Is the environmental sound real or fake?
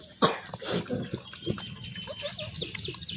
real